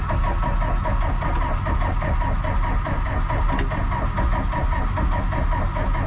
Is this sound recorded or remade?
recorded